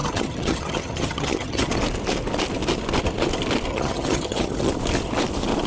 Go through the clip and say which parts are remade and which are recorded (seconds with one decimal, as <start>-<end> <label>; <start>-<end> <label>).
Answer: 0.0-1.7 remade; 1.7-3.7 recorded; 3.7-4.7 remade; 4.7-5.7 recorded

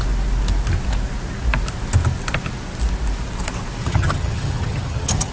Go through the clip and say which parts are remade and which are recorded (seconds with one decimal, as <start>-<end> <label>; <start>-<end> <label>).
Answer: 0.0-3.8 recorded; 3.8-5.3 remade

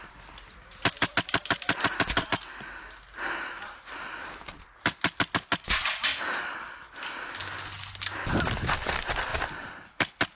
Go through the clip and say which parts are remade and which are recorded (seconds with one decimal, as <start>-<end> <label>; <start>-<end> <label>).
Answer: 0.0-10.4 recorded